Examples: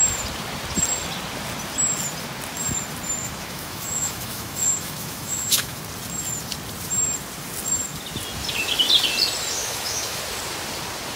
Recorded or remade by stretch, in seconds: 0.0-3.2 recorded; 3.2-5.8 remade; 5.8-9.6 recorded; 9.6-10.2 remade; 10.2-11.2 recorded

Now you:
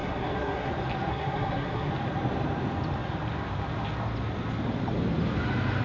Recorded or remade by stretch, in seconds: 0.0-0.7 remade; 0.7-1.1 recorded; 1.1-1.9 remade; 1.9-5.8 recorded

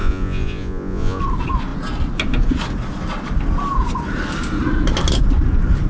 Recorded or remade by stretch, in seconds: 0.0-1.2 remade; 1.2-5.9 recorded

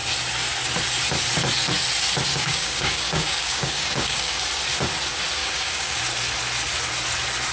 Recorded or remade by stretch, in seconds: 0.0-2.3 recorded; 2.3-4.4 remade; 4.4-5.4 recorded; 5.4-6.0 remade; 6.0-7.5 recorded

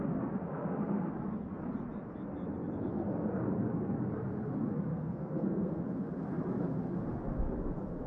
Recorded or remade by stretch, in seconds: 0.0-0.4 recorded; 0.4-1.1 remade; 1.1-4.9 recorded; 4.9-5.8 remade; 5.8-8.1 recorded

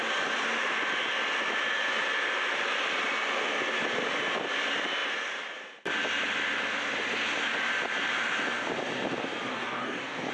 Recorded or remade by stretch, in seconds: 0.0-9.5 recorded; 9.5-10.3 remade